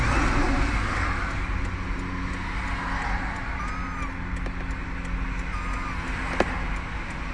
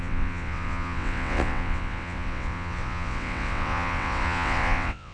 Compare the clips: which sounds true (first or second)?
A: first